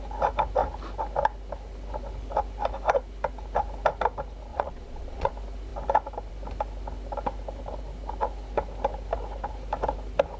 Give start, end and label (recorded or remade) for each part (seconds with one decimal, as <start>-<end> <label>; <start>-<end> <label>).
0.0-4.5 recorded; 4.5-5.3 remade; 5.3-10.4 recorded